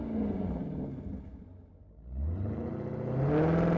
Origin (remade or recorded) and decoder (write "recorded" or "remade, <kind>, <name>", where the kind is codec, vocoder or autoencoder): recorded